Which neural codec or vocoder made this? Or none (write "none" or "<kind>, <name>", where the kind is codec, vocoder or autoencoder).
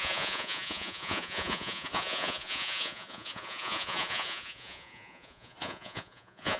vocoder, Vocos